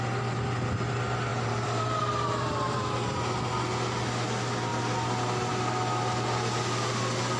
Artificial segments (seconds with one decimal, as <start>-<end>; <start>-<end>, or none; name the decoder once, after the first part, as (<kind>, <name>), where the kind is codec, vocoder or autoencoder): 1.3-2.0 (vocoder, BigVGAN v2)